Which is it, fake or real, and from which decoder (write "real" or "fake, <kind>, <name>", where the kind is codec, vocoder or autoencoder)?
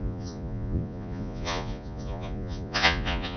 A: fake, vocoder, Vocos